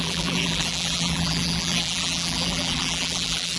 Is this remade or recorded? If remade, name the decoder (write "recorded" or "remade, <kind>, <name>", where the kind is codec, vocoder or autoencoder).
remade, vocoder, BigVGAN v2